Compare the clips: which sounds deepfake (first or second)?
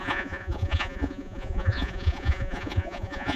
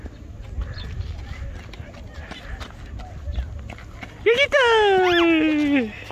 first